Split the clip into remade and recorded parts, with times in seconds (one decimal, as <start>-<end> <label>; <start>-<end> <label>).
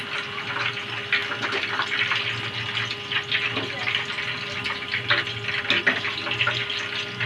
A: 0.0-7.3 recorded